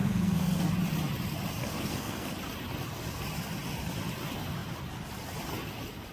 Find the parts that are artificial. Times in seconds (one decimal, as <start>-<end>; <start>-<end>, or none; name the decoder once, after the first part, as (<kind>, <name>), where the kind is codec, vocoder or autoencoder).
0.0-0.7 (codec, SNAC); 1.6-2.3